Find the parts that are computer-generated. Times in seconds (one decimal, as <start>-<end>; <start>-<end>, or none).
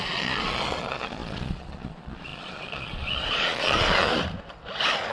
0.0-4.1